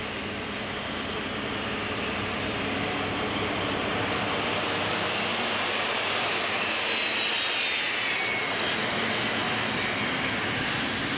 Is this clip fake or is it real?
real